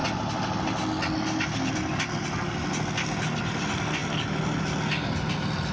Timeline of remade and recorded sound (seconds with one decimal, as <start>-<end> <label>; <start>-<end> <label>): 0.0-5.7 recorded